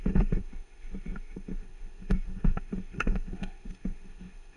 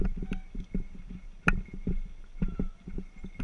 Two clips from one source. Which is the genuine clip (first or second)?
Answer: second